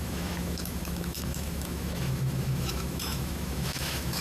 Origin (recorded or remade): remade